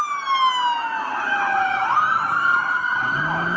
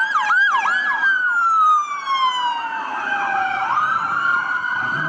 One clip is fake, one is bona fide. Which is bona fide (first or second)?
first